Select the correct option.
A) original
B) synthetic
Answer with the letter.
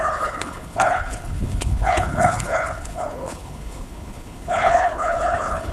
B